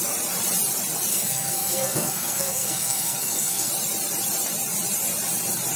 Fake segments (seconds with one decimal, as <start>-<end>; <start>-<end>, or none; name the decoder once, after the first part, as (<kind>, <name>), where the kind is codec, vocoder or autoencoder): 1.1-3.7 (codec, SNAC)